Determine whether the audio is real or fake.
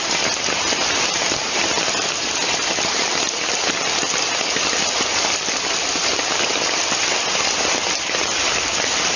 real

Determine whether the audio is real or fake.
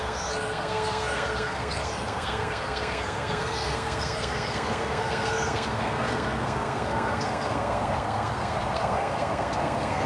fake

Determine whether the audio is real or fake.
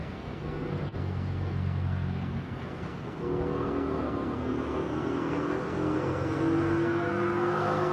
fake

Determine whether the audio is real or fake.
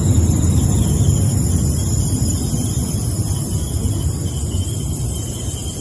real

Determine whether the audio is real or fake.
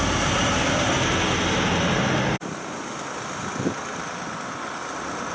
real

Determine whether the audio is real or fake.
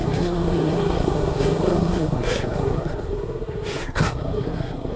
fake